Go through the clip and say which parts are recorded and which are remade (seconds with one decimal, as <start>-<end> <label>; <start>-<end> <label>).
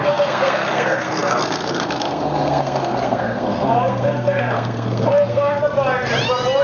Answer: 0.0-5.6 remade; 5.6-6.6 recorded